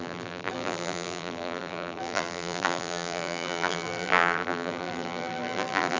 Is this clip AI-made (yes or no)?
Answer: yes